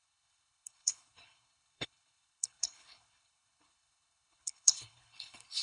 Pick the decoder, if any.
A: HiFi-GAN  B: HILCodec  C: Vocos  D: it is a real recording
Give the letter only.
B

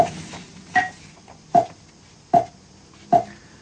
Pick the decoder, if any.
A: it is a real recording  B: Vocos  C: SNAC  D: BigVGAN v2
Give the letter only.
A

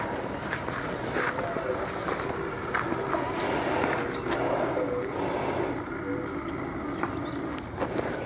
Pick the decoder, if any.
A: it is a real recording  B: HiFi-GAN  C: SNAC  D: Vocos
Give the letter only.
A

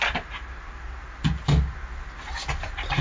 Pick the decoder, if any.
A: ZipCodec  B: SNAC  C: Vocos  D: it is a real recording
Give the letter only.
D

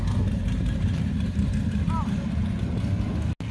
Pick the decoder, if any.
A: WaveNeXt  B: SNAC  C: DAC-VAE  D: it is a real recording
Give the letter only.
D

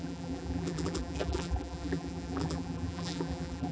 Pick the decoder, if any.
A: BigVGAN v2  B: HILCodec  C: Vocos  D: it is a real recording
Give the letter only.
A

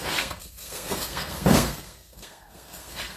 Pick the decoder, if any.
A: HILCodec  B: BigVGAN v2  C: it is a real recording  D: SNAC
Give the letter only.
D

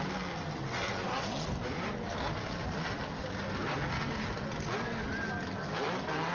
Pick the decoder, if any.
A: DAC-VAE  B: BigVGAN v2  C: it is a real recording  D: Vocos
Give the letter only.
C